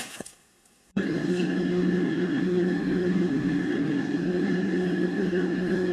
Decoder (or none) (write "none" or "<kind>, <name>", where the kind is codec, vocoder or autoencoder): codec, SNAC